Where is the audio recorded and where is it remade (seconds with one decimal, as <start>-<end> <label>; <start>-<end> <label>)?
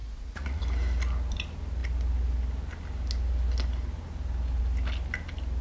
0.0-0.6 remade; 0.6-5.6 recorded